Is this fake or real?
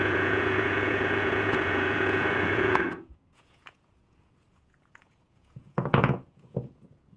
fake